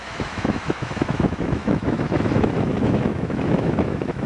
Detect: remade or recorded remade